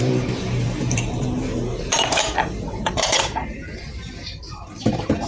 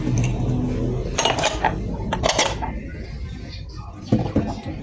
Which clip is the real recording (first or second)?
second